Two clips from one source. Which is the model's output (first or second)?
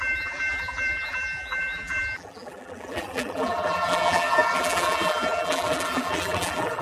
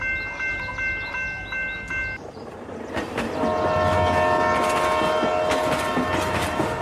first